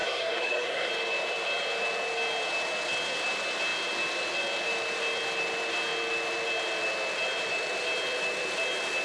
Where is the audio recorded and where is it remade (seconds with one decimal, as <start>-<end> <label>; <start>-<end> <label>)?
0.0-0.9 remade; 0.9-9.0 recorded